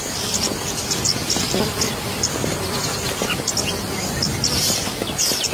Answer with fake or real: real